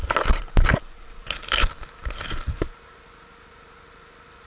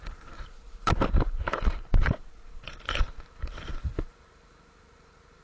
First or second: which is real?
first